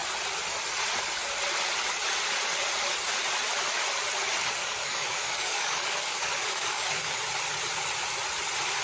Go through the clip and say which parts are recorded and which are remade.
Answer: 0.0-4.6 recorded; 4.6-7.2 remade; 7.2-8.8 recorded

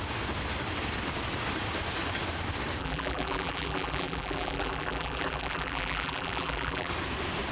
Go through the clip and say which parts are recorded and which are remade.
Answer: 0.0-2.8 recorded; 2.8-6.9 remade; 6.9-7.5 recorded